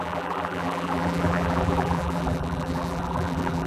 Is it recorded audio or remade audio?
remade